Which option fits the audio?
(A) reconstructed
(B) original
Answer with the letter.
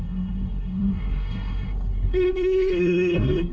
A